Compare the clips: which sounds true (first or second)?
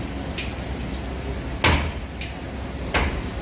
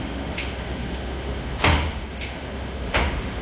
first